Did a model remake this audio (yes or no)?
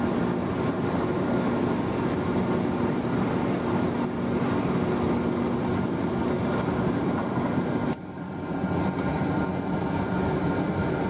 no